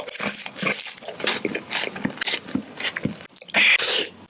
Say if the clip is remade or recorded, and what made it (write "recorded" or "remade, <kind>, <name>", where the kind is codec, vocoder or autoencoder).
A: recorded